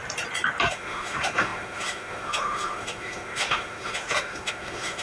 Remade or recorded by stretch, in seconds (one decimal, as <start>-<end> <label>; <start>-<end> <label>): 0.0-0.7 recorded; 0.7-5.0 remade